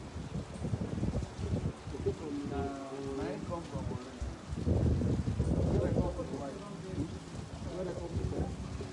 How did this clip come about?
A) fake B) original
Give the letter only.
B